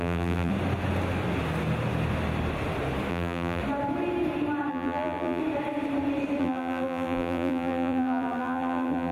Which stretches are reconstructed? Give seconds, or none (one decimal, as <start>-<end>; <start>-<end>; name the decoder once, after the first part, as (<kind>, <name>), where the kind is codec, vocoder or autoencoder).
0.0-0.5 (vocoder, BigVGAN v2); 3.1-3.6; 4.7-5.4; 6.4-9.1